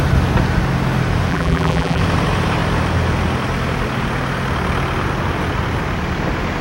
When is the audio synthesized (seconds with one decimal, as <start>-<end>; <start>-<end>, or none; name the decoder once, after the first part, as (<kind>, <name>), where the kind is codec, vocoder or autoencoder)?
1.3-2.0 (vocoder, BigVGAN v2)